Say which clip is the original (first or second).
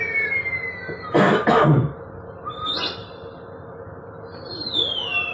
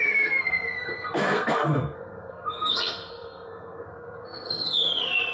first